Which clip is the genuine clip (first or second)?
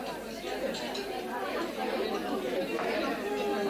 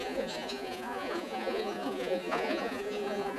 first